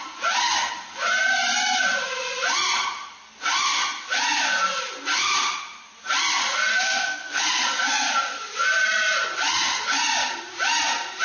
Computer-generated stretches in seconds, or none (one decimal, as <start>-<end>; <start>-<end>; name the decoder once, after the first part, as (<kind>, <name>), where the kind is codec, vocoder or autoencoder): 6.7-7.4 (codec, SNAC)